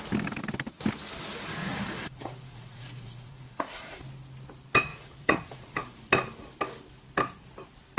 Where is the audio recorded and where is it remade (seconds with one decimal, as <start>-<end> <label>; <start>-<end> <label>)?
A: 0.0-1.6 recorded; 1.6-4.0 remade; 4.0-4.9 recorded; 4.9-6.0 remade; 6.0-8.0 recorded